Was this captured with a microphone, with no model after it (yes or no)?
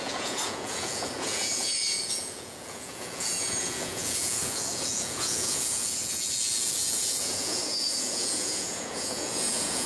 no